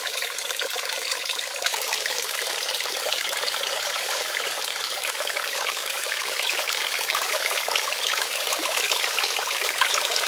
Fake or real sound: fake